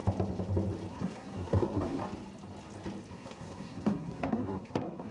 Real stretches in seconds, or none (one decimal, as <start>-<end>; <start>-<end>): 0.0-0.9; 2.0-3.1